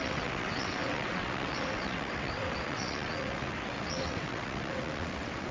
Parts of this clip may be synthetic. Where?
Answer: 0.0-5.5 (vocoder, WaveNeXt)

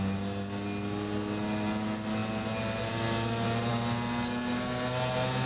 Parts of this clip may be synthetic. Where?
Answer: none

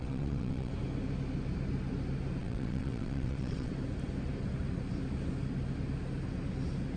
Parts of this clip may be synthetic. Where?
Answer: 0.0-0.7 (vocoder, WaveNeXt); 2.4-3.7

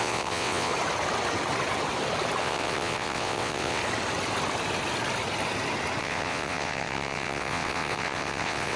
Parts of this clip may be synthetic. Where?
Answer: 0.0-0.7 (vocoder, WaveNeXt); 2.4-3.8; 6.0-8.8

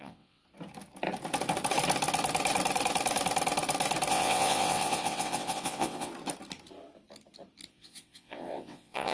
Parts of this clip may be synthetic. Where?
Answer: 0.0-0.4 (vocoder, WaveNeXt); 4.1-6.1; 7.7-9.1